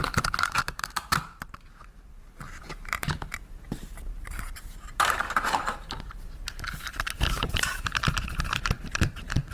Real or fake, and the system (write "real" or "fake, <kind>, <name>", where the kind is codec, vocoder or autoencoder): fake, vocoder, BigVGAN v2